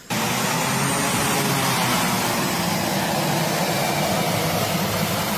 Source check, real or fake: real